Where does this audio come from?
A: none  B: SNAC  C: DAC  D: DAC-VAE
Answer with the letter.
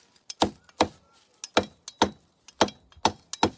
A